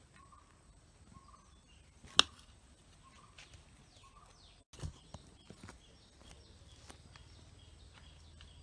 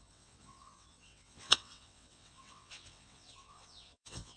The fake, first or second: second